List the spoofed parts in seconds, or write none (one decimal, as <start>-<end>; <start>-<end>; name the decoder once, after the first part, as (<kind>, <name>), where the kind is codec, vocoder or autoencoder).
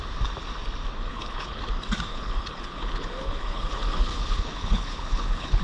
1.1-1.6 (codec, HILCodec); 2.1-5.6